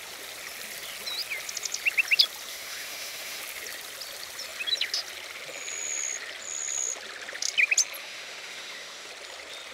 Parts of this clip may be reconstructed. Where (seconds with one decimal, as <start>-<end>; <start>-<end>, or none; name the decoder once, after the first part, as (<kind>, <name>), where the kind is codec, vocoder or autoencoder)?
2.5-3.4 (autoencoder, DAC-VAE); 8.0-9.1